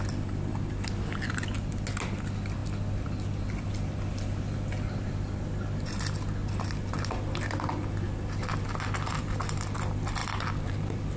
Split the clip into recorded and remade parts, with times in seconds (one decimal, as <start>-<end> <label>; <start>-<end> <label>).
0.0-11.2 recorded